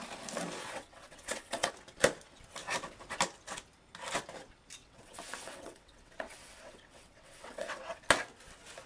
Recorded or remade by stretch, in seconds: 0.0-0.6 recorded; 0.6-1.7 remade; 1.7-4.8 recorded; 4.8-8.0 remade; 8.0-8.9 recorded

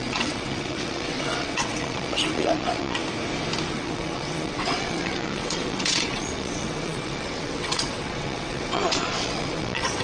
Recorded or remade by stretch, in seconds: 0.0-3.0 remade; 3.0-3.7 recorded; 3.7-10.0 remade

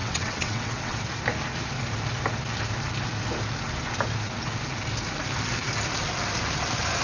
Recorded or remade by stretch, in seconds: 0.0-1.0 remade; 1.0-7.0 recorded

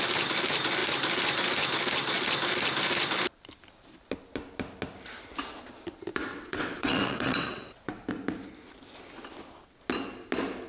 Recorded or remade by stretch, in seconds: 0.0-6.3 recorded; 6.3-8.1 remade; 8.1-10.7 recorded